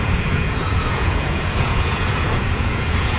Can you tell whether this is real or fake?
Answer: fake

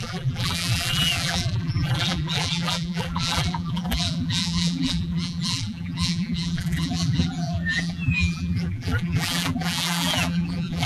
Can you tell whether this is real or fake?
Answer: fake